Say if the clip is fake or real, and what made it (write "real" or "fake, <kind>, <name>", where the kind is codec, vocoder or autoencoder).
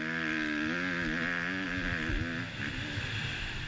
real